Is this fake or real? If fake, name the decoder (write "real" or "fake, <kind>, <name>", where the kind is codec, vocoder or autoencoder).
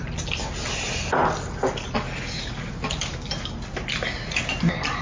real